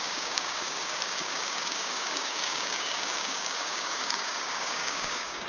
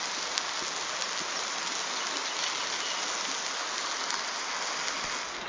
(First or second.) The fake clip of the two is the first